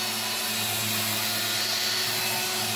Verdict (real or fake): real